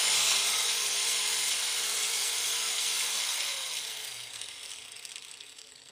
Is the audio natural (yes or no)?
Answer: no